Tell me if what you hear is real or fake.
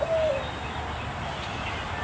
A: real